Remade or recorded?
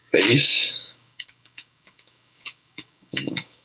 remade